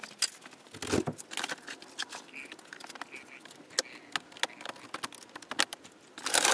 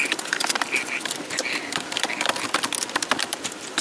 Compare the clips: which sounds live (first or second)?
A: first